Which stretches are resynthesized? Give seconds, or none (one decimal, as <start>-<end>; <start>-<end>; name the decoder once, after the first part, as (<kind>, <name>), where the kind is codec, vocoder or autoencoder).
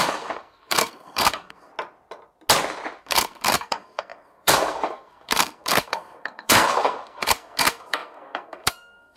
0.0-1.7 (codec, SNAC); 3.0-9.2